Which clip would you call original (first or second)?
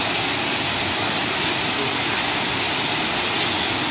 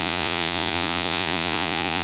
first